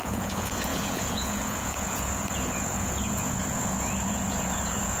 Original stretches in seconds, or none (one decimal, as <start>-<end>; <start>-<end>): none